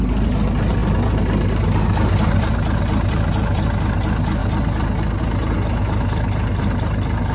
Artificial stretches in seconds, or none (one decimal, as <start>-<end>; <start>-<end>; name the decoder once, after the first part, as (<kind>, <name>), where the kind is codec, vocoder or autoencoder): none